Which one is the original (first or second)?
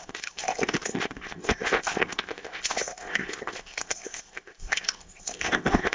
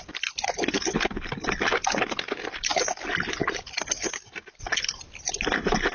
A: second